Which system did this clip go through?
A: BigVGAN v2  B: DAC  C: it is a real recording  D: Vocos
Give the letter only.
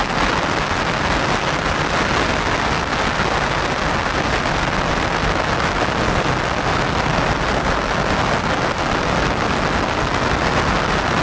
C